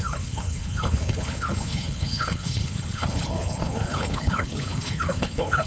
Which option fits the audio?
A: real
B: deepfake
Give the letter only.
B